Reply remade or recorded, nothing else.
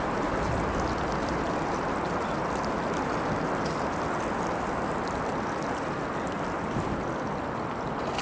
recorded